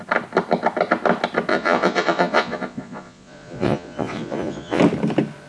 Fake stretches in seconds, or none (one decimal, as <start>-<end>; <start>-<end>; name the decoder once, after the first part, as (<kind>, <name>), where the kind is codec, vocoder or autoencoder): 1.5-4.8 (vocoder, Vocos)